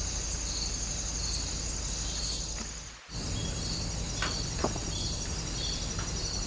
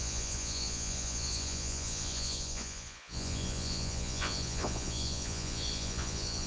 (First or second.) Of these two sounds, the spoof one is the second